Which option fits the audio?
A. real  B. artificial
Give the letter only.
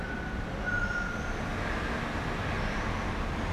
A